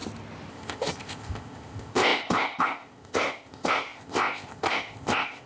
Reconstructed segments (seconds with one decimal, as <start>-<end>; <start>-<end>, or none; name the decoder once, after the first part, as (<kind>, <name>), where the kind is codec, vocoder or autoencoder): 0.5-5.5 (codec, ZipCodec)